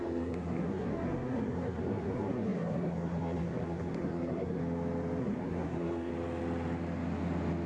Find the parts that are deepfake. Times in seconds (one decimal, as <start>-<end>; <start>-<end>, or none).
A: 0.0-4.6; 5.2-6.1